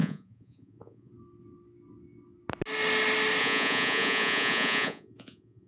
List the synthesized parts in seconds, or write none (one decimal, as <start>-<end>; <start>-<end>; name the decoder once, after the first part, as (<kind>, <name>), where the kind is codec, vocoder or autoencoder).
0.0-1.1 (vocoder, Vocos); 3.4-5.7